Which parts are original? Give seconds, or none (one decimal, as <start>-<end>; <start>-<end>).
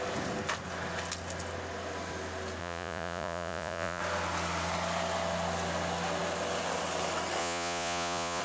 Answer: 0.0-2.6; 4.0-7.4